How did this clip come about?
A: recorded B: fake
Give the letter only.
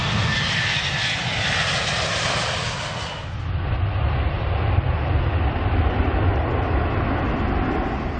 A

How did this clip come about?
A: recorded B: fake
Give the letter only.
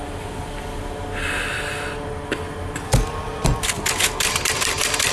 A